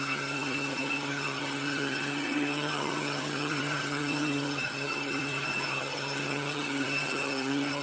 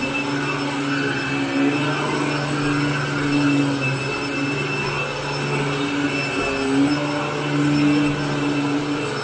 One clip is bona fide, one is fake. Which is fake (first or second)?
first